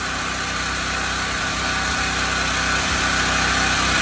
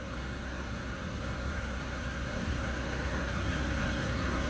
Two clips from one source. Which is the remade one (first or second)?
second